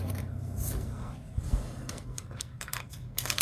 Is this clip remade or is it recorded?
remade